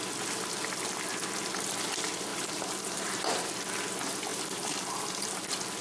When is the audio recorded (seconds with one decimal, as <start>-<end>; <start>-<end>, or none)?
0.0-2.3; 3.5-4.3; 5.3-5.8